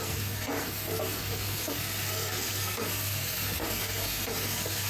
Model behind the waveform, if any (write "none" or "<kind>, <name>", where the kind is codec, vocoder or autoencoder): codec, SNAC